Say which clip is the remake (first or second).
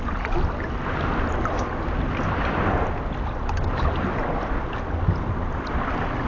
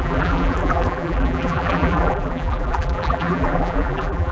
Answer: second